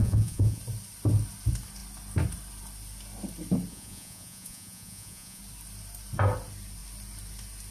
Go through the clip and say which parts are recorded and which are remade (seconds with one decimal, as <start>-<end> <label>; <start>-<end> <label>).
0.0-0.6 remade; 0.6-3.7 recorded; 3.7-5.4 remade; 5.4-7.7 recorded

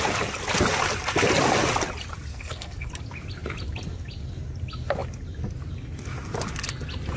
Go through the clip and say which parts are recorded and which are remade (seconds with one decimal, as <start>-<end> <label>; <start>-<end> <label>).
0.0-2.3 recorded; 2.3-2.9 remade; 2.9-7.2 recorded

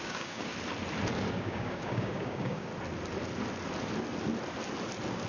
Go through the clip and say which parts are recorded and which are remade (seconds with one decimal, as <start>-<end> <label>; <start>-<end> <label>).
0.0-0.5 remade; 0.5-1.3 recorded; 1.3-2.7 remade; 2.7-5.3 recorded

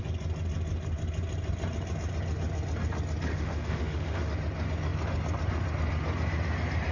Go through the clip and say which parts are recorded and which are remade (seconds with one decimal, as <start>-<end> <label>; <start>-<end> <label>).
0.0-3.3 recorded; 3.3-4.3 remade; 4.3-6.9 recorded